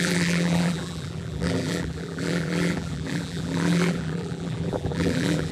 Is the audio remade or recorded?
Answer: remade